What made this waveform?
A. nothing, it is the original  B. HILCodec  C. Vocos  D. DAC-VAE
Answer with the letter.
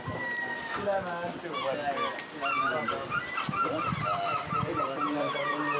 A